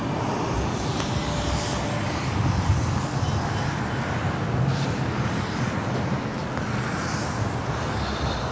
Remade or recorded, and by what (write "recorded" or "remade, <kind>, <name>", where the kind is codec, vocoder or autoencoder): recorded